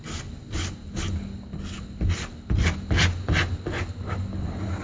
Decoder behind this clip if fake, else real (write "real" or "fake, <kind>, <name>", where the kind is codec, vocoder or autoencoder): real